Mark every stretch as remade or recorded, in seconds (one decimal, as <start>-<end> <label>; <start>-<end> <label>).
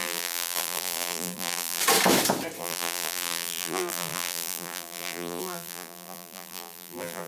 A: 0.0-1.8 remade; 1.8-2.6 recorded; 2.6-7.3 remade